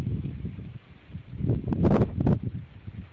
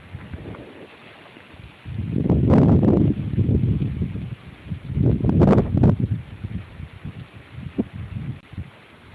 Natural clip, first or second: second